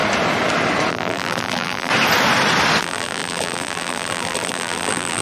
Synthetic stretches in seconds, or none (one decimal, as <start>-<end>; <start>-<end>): 0.9-1.9; 2.8-5.2